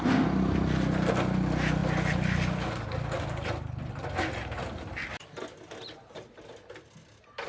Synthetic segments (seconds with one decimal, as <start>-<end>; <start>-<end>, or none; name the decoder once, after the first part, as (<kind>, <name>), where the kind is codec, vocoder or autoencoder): none